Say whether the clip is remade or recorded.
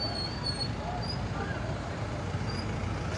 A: recorded